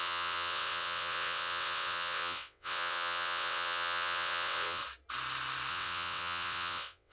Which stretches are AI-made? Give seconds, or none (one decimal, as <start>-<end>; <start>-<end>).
0.0-4.8; 5.7-7.1